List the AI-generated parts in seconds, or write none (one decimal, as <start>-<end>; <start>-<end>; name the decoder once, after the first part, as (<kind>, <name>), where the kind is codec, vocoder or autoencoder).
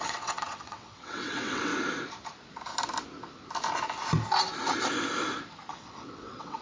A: 0.0-1.7 (vocoder, WaveNeXt); 5.7-6.6